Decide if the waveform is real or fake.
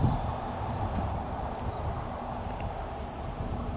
real